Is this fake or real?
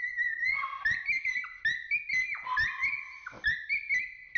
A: real